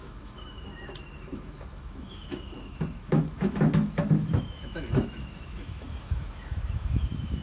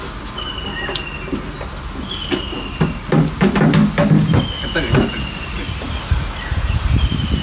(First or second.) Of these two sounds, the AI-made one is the first